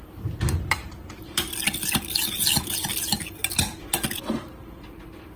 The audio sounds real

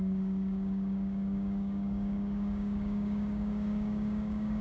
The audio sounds fake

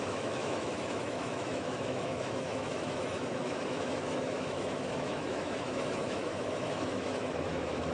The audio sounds fake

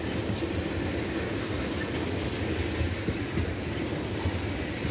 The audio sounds real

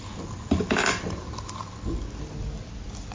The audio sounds real